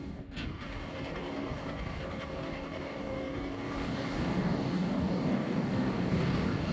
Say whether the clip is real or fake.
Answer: fake